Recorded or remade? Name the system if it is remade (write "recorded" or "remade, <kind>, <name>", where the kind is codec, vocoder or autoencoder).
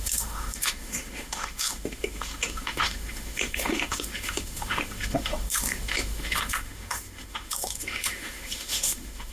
remade, autoencoder, DAC-VAE